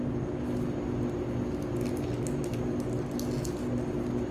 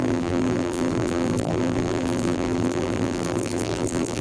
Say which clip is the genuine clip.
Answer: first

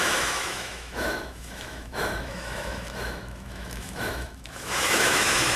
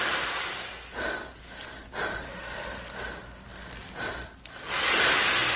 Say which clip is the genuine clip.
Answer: second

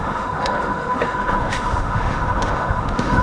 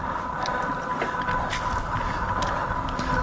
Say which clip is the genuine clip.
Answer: second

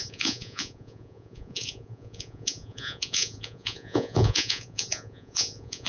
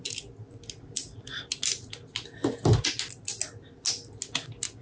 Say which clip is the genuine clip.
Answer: second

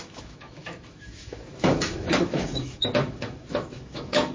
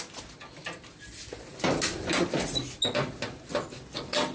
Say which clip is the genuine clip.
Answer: second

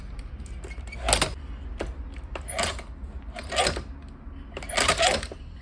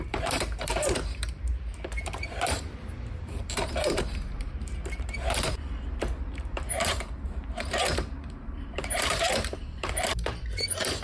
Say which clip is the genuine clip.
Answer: first